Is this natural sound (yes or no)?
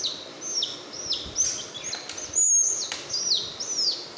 yes